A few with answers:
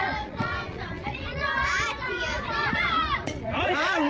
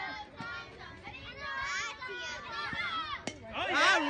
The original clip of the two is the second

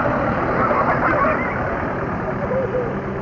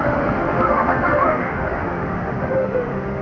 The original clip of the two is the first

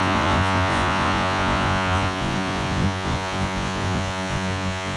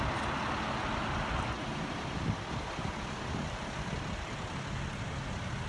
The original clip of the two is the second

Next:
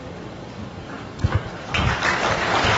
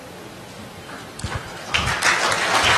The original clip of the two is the second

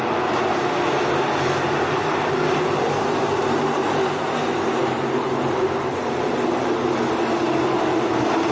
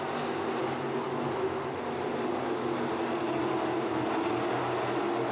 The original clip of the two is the second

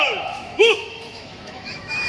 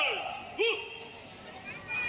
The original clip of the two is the second